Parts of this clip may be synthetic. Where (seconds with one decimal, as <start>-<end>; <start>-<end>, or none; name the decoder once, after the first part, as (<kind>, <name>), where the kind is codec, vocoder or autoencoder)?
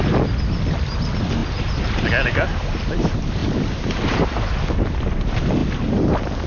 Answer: none